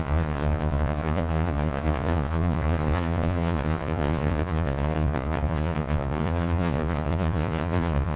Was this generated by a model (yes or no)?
yes